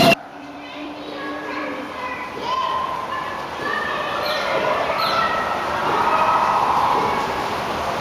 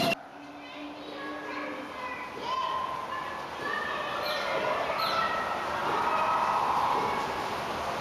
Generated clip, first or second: first